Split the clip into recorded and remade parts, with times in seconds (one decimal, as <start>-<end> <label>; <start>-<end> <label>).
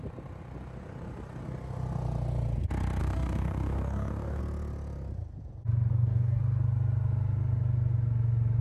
0.0-3.0 recorded; 3.0-4.4 remade; 4.4-5.9 recorded; 5.9-6.4 remade; 6.4-8.6 recorded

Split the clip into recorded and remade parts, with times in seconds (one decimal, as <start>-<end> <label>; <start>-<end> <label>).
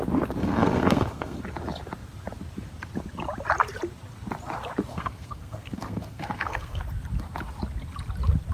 0.0-0.4 recorded; 0.4-1.4 remade; 1.4-4.9 recorded; 4.9-6.8 remade; 6.8-8.5 recorded